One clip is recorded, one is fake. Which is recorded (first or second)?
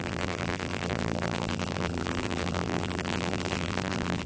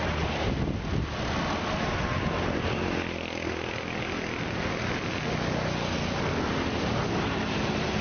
second